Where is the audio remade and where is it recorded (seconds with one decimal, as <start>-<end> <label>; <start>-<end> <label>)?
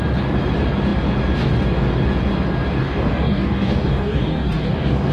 0.0-2.8 recorded; 2.8-5.1 remade